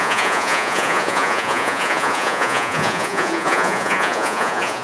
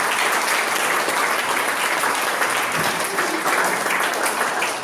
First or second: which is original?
second